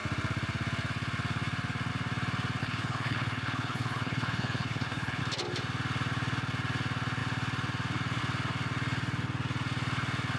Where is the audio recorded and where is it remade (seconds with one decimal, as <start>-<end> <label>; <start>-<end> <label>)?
0.0-2.6 recorded; 2.6-5.2 remade; 5.2-10.4 recorded